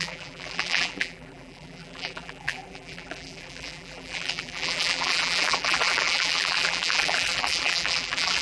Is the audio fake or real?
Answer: fake